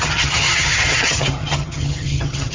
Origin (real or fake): fake